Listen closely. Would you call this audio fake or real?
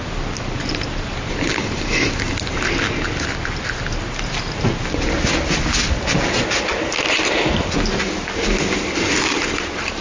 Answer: real